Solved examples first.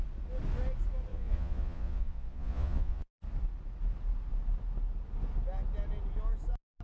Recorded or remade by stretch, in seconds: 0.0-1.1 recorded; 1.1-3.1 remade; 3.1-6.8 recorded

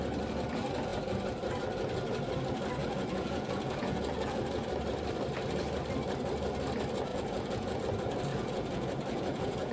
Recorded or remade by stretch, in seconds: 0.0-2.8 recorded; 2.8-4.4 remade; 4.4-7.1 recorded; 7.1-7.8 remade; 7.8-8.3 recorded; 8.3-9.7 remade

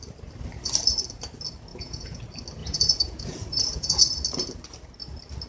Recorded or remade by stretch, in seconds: 0.0-1.7 recorded; 1.7-2.2 remade; 2.2-2.6 recorded; 2.6-4.0 remade; 4.0-5.5 recorded

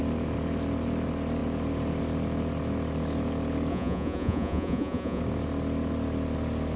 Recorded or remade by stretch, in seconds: 0.0-3.7 recorded; 3.7-5.2 remade; 5.2-6.8 recorded